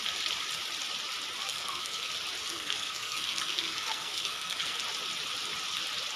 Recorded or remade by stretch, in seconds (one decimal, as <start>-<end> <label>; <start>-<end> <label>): 0.0-1.5 recorded; 1.5-2.1 remade; 2.1-2.5 recorded; 2.5-4.8 remade; 4.8-6.2 recorded